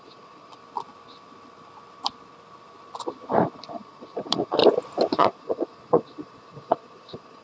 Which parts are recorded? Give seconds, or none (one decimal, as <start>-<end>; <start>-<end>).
0.6-3.7; 4.6-5.2